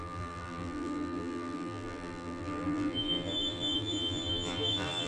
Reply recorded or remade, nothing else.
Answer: remade